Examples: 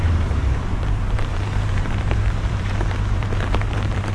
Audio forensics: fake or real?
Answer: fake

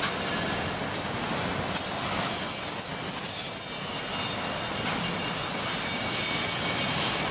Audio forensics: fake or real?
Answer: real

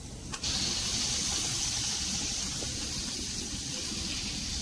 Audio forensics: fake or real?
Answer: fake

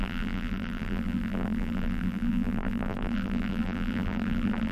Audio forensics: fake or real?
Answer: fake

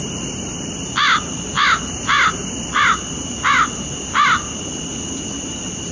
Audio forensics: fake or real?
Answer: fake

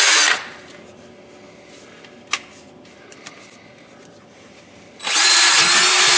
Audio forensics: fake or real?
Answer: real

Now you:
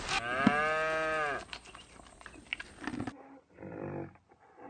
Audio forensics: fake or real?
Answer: real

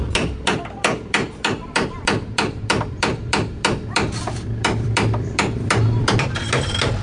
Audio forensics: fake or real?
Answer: fake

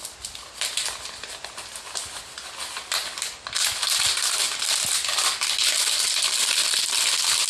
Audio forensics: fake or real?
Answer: real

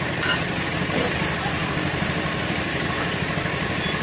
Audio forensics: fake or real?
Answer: real